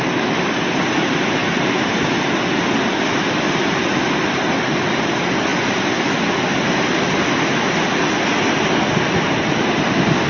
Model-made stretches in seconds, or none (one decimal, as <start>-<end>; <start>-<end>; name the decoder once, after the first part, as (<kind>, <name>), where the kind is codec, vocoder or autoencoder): 1.4-2.2 (vocoder, BigVGAN v2); 3.6-4.3